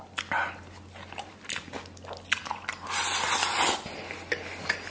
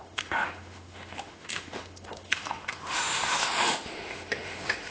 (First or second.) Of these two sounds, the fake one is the second